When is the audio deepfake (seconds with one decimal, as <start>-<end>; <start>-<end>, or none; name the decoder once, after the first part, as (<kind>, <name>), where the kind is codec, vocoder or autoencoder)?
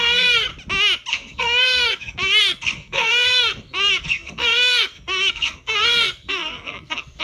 0.0-0.5 (codec, SNAC); 1.1-7.2